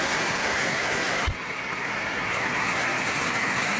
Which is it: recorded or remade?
remade